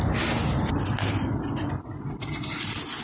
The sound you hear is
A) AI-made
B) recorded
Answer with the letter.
B